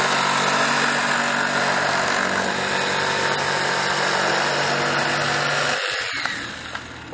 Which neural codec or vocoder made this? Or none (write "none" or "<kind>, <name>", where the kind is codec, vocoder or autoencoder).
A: none